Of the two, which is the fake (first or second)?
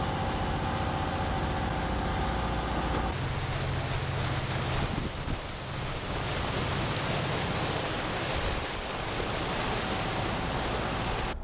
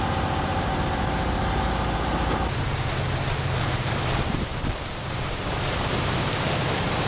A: second